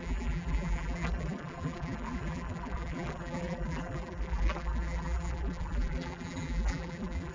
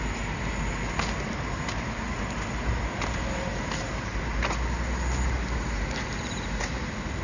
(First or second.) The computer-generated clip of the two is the first